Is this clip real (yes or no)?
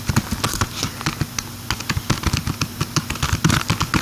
yes